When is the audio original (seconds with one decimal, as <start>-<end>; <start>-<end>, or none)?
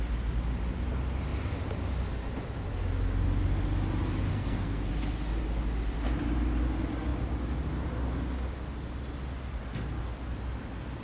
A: 0.0-4.3; 4.9-11.0